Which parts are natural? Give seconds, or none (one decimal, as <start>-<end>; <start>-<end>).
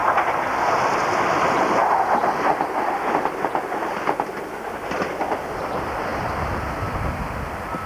0.0-7.9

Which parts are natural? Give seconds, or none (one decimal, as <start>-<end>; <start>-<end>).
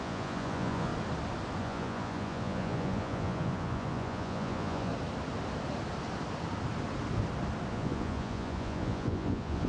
0.9-1.6; 4.9-7.7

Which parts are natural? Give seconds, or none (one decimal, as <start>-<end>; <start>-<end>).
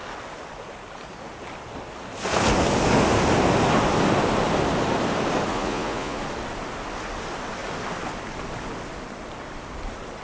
0.0-5.5; 6.2-10.2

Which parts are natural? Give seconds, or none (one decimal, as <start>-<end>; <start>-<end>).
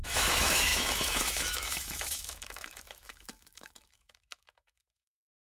none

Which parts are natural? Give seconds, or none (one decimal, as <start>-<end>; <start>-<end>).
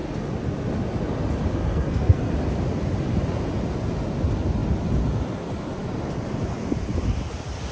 0.0-1.5; 2.3-7.7